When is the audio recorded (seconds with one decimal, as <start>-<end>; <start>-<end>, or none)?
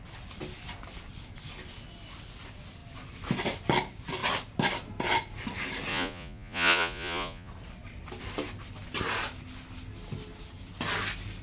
0.0-5.9; 7.5-11.4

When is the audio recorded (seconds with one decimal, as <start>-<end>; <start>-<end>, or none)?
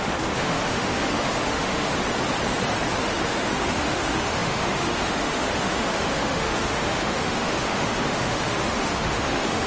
1.9-2.9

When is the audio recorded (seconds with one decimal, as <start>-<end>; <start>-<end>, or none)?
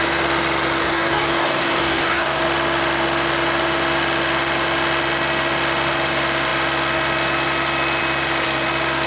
0.0-0.8; 2.4-9.1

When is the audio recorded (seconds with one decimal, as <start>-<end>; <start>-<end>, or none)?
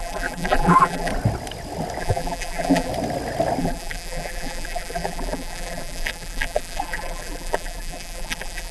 1.1-2.0; 2.9-3.6